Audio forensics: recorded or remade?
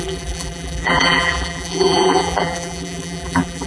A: remade